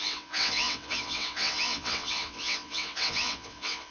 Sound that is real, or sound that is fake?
fake